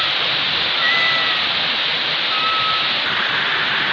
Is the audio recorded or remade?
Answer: recorded